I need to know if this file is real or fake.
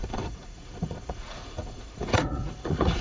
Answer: fake